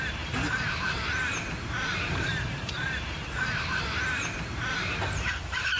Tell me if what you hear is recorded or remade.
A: remade